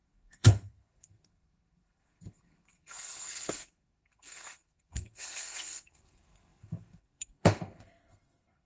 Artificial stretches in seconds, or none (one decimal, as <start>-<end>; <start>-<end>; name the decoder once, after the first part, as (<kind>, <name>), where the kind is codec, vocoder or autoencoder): 0.0-8.7 (codec, SNAC)